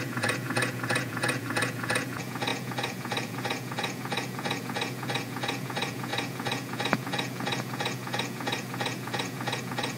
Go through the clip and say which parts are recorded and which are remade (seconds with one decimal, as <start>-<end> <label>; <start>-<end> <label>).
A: 0.0-10.0 remade